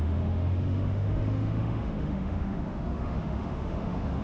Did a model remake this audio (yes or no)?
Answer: yes